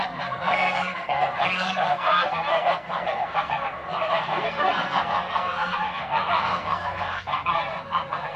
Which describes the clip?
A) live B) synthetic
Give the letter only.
B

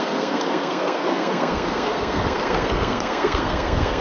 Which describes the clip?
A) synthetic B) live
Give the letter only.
A